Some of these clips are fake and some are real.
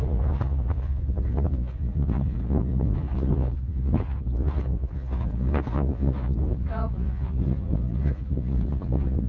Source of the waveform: fake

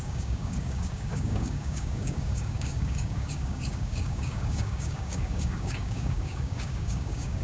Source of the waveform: fake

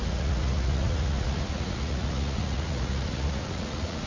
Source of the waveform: fake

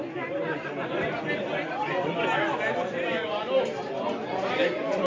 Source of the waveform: real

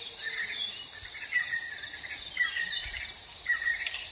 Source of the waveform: real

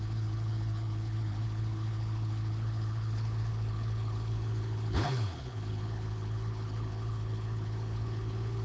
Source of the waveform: fake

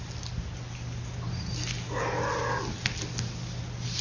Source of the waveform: real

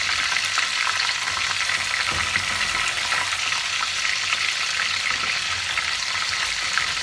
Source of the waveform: real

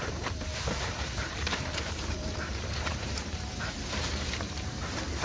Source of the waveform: fake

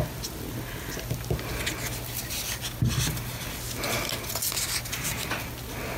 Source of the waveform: real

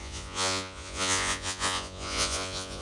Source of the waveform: fake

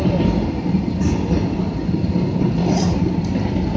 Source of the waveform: real